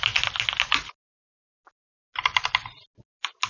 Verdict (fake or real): real